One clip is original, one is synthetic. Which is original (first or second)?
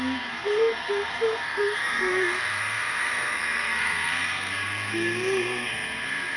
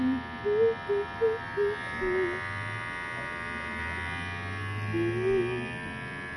second